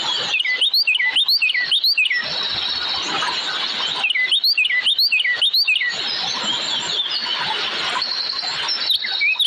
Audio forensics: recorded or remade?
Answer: recorded